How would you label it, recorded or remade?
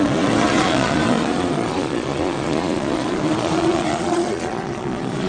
remade